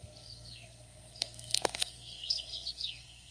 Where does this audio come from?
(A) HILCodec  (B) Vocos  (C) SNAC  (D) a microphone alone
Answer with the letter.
C